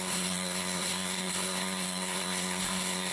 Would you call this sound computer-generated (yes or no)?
yes